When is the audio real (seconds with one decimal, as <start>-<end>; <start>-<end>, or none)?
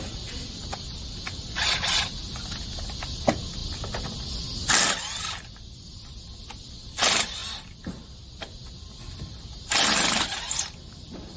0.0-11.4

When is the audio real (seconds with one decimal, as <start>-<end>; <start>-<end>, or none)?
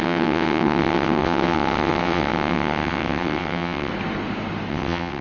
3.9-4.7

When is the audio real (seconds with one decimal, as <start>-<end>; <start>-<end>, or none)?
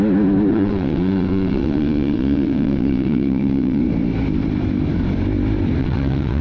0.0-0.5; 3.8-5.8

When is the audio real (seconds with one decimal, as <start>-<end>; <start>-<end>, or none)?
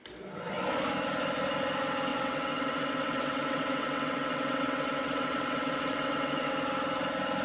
0.0-2.1; 6.5-7.4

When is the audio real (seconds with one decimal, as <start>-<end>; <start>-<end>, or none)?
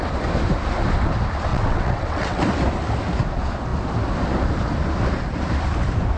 0.0-1.5; 2.4-6.2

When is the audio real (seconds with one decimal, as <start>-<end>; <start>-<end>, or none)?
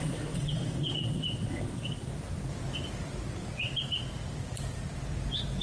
2.1-5.6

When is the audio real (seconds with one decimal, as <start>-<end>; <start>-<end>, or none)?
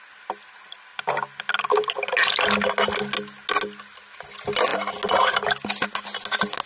0.0-6.7